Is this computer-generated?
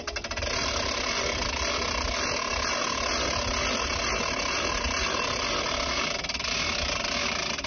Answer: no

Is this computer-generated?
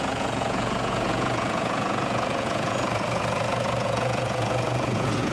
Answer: yes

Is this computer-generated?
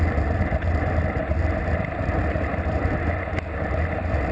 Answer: no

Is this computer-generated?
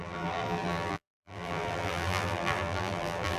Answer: yes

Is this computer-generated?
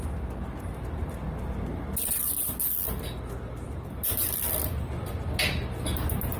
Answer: no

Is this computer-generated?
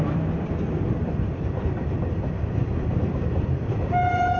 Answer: yes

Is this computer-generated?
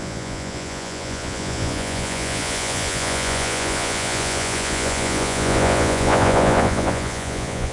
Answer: yes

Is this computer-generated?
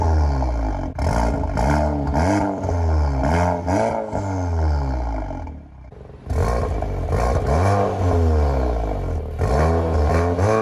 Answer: no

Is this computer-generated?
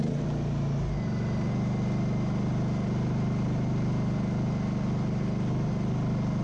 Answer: no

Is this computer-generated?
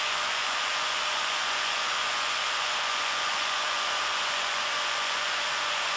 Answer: yes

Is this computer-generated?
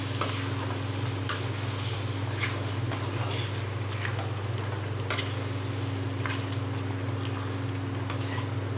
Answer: no